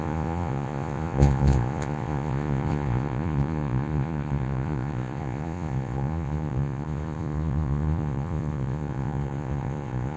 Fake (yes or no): yes